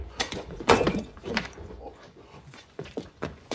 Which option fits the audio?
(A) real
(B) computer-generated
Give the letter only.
B